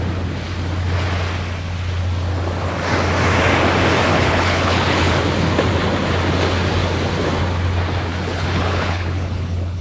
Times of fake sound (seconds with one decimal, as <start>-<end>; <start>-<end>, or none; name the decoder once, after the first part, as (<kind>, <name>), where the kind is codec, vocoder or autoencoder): 4.1-5.1 (codec, HILCodec); 8.1-9.8